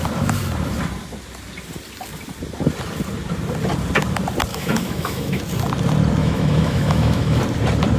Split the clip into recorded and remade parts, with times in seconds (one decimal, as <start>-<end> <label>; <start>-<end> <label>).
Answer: 0.0-4.5 recorded; 4.5-5.4 remade; 5.4-6.2 recorded; 6.2-7.4 remade; 7.4-8.0 recorded